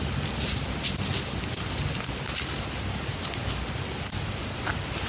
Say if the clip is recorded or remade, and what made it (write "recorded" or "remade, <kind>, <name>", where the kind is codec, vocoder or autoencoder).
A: recorded